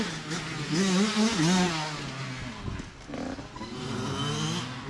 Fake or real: real